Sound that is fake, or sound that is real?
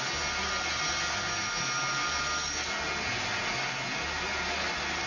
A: real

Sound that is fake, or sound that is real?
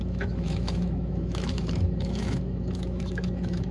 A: fake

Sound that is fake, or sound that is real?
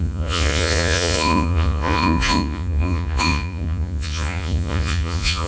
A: fake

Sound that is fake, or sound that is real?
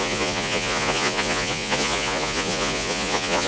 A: fake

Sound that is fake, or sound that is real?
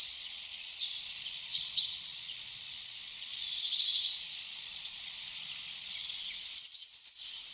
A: fake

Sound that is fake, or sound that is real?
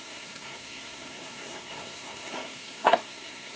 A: fake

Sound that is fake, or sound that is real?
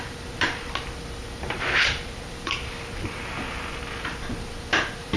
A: fake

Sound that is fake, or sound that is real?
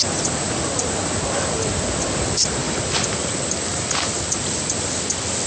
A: fake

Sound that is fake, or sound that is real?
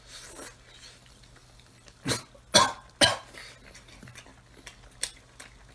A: real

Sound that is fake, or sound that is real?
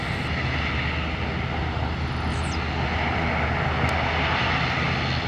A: real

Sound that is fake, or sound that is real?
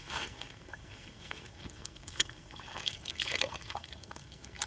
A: fake